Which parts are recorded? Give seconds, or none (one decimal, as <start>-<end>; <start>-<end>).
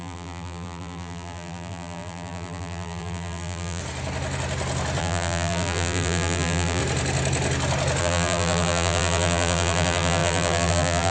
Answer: 3.8-5.0; 6.8-8.0